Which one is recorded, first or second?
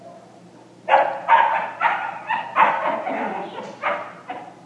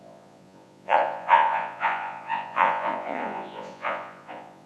first